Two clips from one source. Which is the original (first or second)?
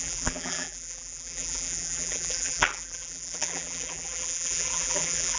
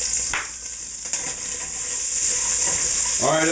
second